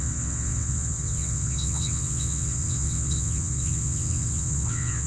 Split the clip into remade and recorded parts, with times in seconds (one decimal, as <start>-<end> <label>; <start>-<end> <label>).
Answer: 0.0-5.1 remade